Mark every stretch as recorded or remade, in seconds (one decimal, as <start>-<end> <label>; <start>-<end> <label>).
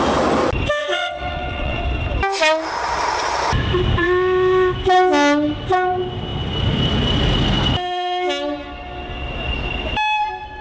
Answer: 0.0-0.8 recorded; 0.8-1.8 remade; 1.8-10.6 recorded